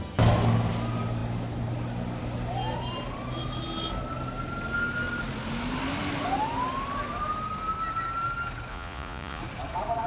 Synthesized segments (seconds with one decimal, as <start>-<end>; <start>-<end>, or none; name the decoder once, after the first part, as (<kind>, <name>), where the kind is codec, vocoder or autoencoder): 8.7-9.4 (vocoder, Vocos)